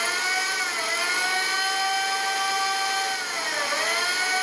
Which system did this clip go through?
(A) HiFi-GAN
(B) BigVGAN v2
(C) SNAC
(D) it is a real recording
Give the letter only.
D